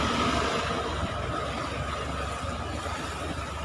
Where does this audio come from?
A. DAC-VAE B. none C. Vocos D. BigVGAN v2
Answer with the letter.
D